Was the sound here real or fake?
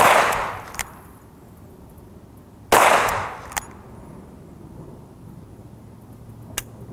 real